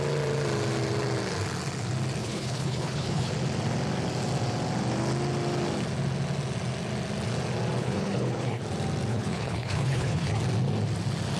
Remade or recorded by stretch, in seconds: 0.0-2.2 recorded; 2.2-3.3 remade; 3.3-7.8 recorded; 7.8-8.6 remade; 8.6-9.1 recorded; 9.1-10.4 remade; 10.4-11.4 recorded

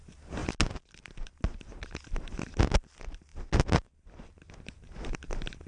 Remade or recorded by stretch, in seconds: 0.0-5.7 recorded

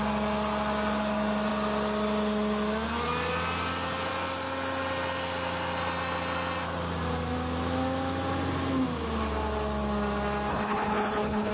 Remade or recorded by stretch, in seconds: 0.0-10.5 recorded; 10.5-11.5 remade

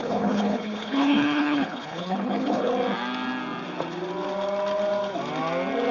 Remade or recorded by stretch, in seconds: 0.0-2.7 remade; 2.7-5.9 recorded

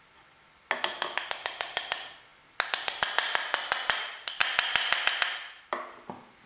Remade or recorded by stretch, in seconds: 0.0-6.5 recorded

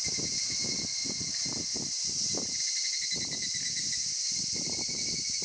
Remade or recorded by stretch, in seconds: 0.0-5.4 recorded